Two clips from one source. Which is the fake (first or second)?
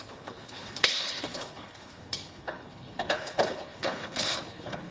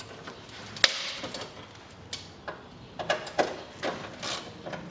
first